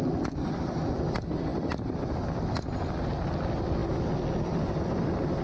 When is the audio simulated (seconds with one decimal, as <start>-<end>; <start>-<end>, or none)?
none